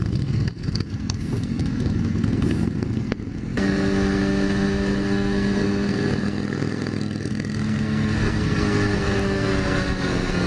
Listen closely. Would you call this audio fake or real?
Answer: fake